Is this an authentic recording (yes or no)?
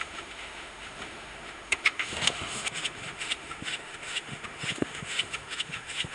no